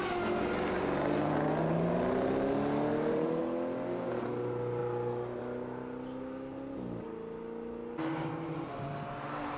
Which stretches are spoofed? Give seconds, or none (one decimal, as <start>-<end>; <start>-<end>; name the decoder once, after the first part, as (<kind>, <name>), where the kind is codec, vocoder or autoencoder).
2.9-3.4 (vocoder, BigVGAN v2)